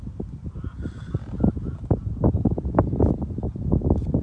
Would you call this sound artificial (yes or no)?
no